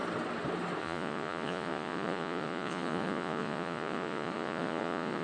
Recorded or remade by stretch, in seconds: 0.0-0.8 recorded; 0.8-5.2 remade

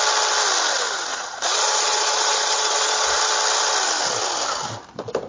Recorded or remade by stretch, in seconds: 0.0-1.1 recorded; 1.1-3.2 remade; 3.2-5.3 recorded